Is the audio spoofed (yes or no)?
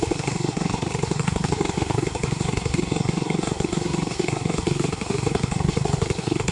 yes